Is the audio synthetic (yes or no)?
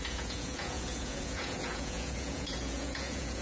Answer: yes